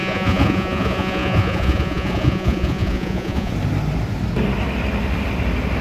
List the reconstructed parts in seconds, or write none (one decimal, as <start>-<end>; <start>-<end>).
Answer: 0.0-3.5